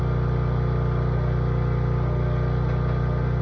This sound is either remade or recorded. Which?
recorded